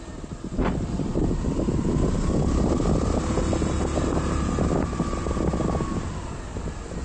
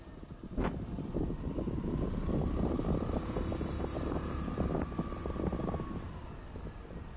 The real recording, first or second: first